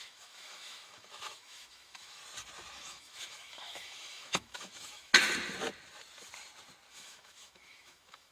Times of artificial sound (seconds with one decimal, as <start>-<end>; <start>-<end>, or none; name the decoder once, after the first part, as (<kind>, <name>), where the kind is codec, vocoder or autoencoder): 0.0-2.2 (autoencoder, DAC-VAE); 2.7-5.1; 6.9-8.3